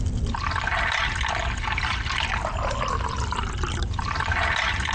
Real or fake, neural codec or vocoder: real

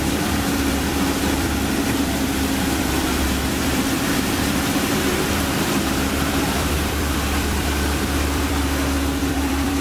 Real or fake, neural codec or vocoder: fake, vocoder, BigVGAN v2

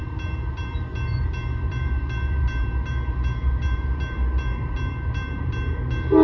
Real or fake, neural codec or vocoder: fake, vocoder, BigVGAN v2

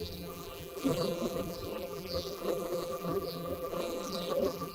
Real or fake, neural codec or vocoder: fake, vocoder, BigVGAN v2